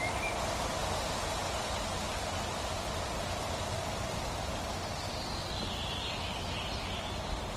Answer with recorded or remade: recorded